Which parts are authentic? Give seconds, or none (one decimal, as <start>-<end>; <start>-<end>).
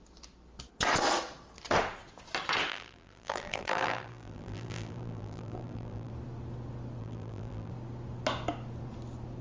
0.0-2.7; 6.1-7.0; 7.7-9.4